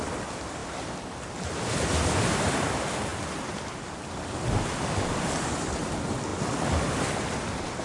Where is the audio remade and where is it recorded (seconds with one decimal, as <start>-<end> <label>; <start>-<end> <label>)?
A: 0.0-7.8 recorded